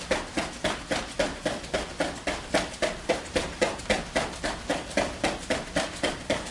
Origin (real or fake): real